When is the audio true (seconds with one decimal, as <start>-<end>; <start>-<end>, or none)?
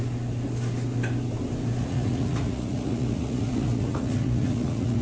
0.0-1.8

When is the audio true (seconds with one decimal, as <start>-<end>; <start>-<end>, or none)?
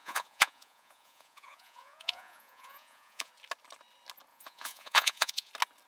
3.3-4.3; 5.5-5.9